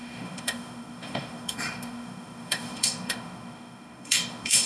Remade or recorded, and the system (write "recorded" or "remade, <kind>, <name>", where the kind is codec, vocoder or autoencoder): remade, autoencoder, DAC-VAE